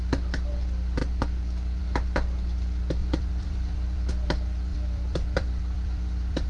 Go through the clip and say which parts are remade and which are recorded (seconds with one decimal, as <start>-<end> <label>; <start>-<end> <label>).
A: 0.0-3.0 recorded; 3.0-4.1 remade; 4.1-4.7 recorded; 4.7-6.5 remade